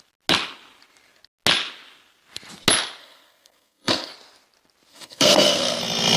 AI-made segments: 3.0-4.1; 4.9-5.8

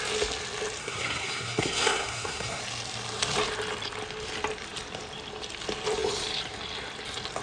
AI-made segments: 0.8-2.6

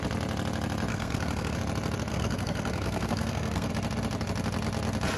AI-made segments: 0.9-1.6; 2.1-3.7

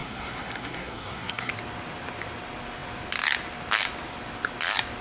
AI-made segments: 0.0-1.5

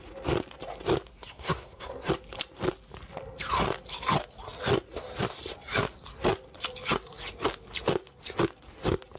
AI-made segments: 1.1-2.1

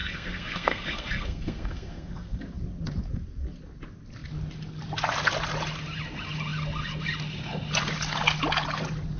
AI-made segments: 0.0-2.4

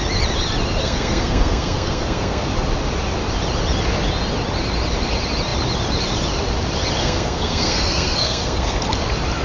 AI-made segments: 0.8-2.5; 7.0-8.8

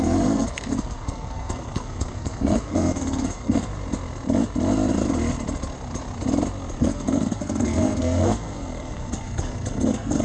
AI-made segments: 0.0-3.7; 6.8-10.2